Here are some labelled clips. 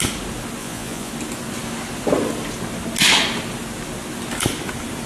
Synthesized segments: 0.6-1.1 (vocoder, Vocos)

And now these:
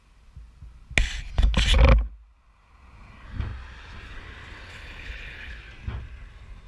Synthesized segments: 4.7-5.5 (codec, HILCodec)

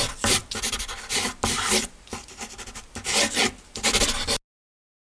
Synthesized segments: none

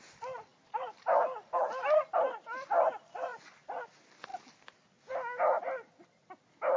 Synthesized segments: 0.5-2.2 (vocoder, BigVGAN v2); 3.3-3.8

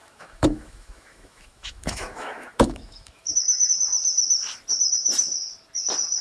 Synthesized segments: 0.0-3.7 (autoencoder, DAC-VAE); 4.7-5.5

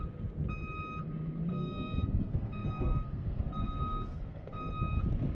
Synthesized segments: 1.5-4.7 (codec, SNAC)

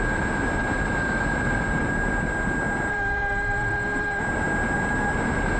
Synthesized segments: 2.9-4.2 (autoencoder, DAC-VAE)